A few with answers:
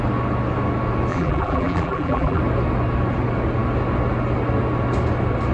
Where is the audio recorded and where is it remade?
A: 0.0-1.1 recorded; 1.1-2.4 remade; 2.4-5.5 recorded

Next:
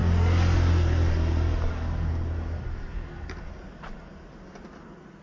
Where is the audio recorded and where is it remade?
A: 0.0-5.2 recorded

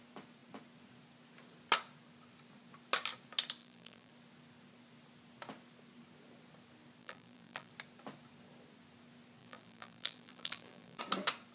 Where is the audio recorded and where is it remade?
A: 0.0-3.6 recorded; 3.6-4.1 remade; 4.1-7.0 recorded; 7.0-7.7 remade; 7.7-9.4 recorded; 9.4-11.0 remade; 11.0-11.5 recorded

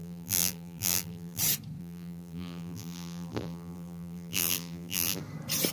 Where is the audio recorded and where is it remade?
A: 0.0-1.4 remade; 1.4-1.8 recorded; 1.8-5.2 remade; 5.2-5.7 recorded

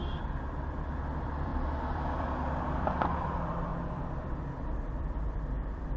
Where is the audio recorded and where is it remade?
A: 0.0-6.0 remade